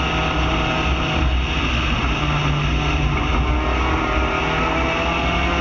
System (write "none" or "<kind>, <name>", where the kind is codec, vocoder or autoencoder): none